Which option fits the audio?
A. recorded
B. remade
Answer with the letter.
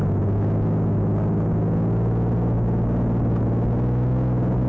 A